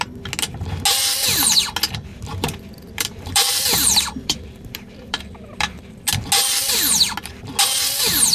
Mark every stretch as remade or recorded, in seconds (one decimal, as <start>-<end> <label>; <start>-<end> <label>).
0.0-2.1 recorded; 2.1-6.3 remade; 6.3-8.3 recorded